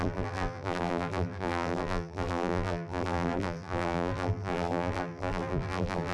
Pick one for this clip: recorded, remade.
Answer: remade